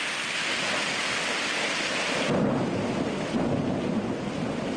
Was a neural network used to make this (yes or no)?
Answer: no